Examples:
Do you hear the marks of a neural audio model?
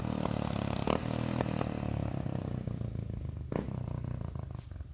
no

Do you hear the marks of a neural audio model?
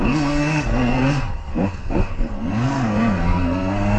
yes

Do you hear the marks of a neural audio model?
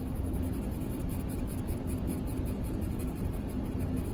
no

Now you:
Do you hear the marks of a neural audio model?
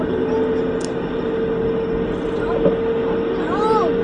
no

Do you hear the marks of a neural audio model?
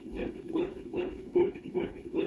yes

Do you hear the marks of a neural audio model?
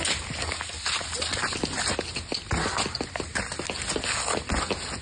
no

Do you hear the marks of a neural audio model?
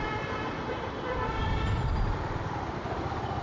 yes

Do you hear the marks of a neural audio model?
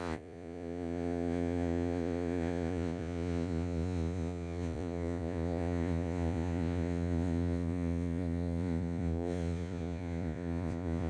yes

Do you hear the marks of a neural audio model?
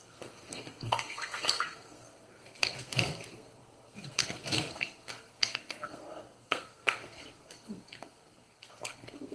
yes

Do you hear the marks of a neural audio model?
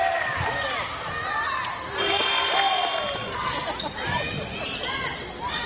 no